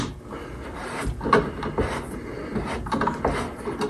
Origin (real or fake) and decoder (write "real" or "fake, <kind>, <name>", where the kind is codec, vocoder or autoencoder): real